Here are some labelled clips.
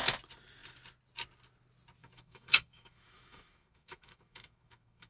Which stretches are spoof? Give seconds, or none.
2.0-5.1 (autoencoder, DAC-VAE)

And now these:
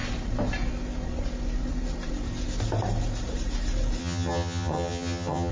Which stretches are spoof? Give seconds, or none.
4.0-5.5 (vocoder, HiFi-GAN)

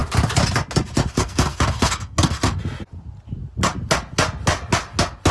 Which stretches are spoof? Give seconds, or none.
1.1-2.6 (codec, SNAC)

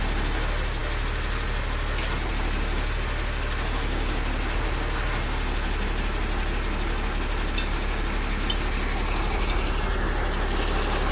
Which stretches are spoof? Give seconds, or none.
none

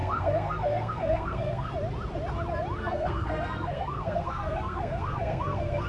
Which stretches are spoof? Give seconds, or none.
0.0-1.7 (codec, SNAC); 2.8-5.9

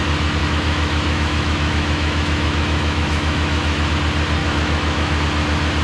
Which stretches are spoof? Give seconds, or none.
0.4-3.9 (autoencoder, DAC-VAE); 4.4-5.2

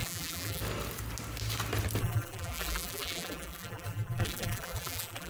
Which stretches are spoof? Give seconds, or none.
0.0-0.6 (vocoder, BigVGAN v2); 2.0-5.3

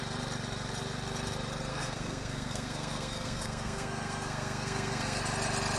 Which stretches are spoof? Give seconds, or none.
1.7-5.2 (codec, SNAC)